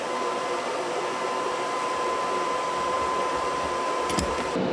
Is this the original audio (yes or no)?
no